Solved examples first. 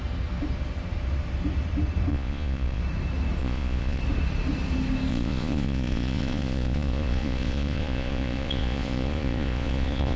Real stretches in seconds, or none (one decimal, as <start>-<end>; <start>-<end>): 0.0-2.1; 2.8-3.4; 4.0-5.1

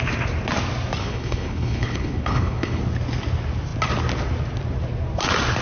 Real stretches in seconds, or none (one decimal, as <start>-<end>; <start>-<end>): 0.0-1.0; 2.8-5.6

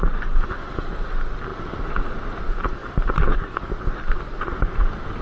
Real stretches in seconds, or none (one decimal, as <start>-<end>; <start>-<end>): 0.0-5.2

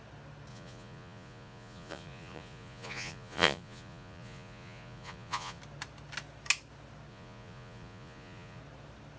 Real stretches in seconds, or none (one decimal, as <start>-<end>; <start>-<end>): 0.0-0.5; 5.6-7.1; 8.6-9.2